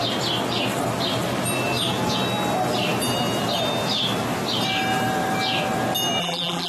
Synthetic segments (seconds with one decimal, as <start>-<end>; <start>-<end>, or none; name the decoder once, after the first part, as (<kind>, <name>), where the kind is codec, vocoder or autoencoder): 6.2-6.7 (vocoder, BigVGAN v2)